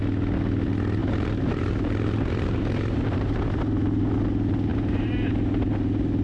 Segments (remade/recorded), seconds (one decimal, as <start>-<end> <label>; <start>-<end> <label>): 0.0-1.0 recorded; 1.0-3.4 remade; 3.4-4.7 recorded; 4.7-5.3 remade; 5.3-6.2 recorded